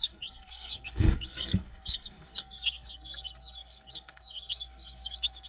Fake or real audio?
fake